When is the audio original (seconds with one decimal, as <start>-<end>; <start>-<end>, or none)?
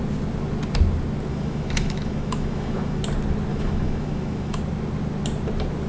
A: 0.0-1.3; 3.0-3.5; 4.6-5.9